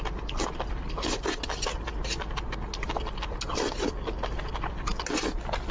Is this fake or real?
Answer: real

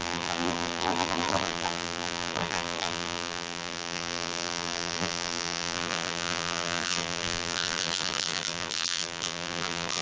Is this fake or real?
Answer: fake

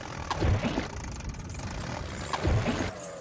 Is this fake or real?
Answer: fake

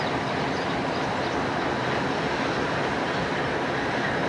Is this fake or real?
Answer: real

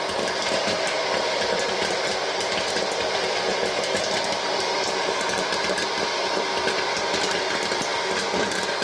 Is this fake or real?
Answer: fake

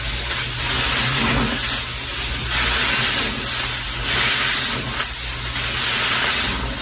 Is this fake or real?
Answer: real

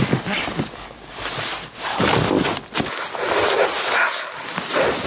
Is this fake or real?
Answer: real